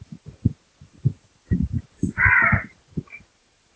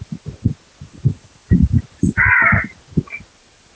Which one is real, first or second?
second